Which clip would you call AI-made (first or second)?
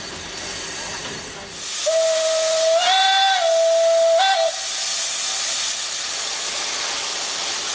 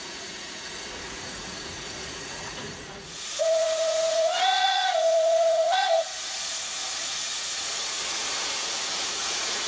second